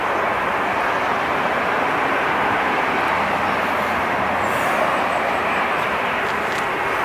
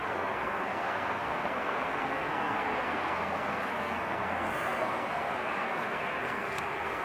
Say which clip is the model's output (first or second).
second